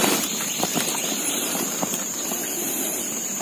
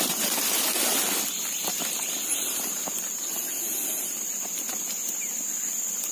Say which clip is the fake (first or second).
first